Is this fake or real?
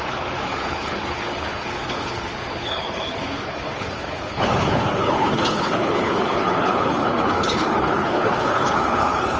fake